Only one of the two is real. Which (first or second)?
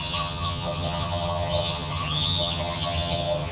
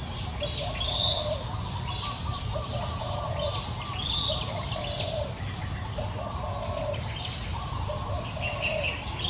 second